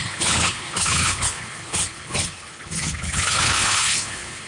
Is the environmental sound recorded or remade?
remade